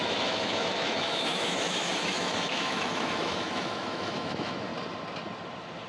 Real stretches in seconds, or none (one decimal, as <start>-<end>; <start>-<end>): 4.7-5.9